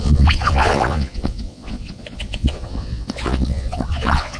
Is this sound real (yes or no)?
no